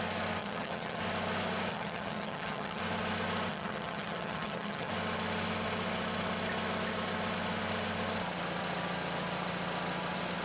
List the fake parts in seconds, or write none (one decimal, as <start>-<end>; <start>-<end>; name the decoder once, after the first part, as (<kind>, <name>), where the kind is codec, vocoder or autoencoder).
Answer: 0.4-1.0 (vocoder, HiFi-GAN); 1.7-2.8; 3.5-4.9